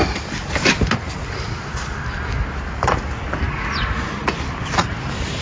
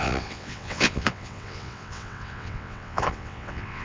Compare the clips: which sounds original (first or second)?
first